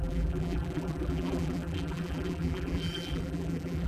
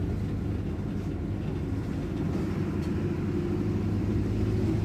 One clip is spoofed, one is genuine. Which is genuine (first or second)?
second